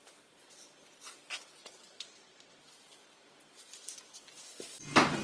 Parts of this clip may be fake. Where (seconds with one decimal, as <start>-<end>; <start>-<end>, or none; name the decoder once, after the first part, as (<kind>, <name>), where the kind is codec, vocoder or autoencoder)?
1.6-2.6 (vocoder, Vocos)